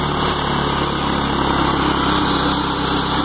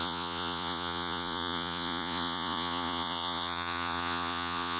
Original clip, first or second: first